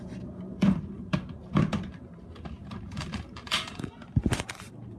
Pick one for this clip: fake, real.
fake